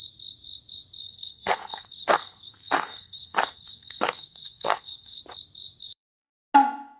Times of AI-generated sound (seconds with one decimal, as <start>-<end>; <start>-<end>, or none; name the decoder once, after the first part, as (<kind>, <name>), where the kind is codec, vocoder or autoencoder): 1.0-5.2 (codec, SNAC); 5.8-6.3